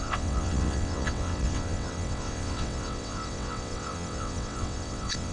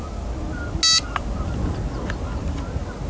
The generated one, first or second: first